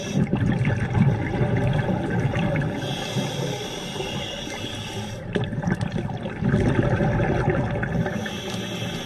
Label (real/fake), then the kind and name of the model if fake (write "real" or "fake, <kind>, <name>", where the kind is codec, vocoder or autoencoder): real